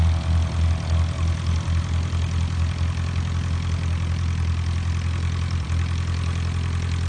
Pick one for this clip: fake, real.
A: real